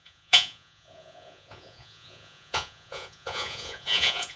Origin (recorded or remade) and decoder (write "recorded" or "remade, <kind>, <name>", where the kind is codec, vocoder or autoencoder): remade, vocoder, Vocos